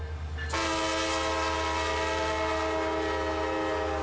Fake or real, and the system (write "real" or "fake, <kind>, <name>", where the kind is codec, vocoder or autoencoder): real